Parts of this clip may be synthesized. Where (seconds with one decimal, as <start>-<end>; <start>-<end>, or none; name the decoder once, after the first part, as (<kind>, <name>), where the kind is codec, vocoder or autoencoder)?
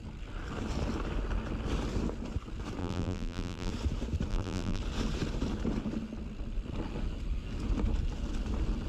2.8-3.7 (vocoder, BigVGAN v2); 4.3-4.8